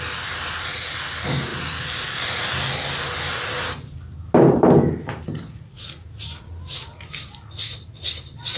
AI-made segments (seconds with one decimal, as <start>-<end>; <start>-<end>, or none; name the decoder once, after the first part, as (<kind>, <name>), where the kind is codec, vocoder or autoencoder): none